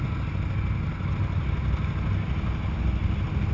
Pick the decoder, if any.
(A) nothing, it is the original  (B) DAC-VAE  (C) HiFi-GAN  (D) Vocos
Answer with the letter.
A